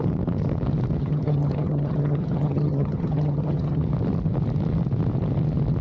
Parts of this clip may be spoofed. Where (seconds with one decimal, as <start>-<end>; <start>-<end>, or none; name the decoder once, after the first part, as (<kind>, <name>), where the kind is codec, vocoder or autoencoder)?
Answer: 1.0-3.8 (vocoder, HiFi-GAN)